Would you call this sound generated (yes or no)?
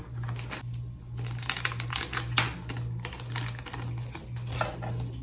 no